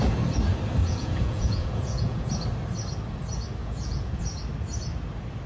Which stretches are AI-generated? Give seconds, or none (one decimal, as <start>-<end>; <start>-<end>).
0.8-2.3; 3.6-4.2